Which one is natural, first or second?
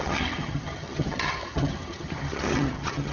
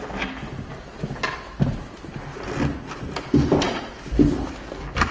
second